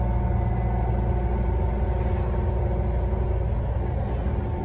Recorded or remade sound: recorded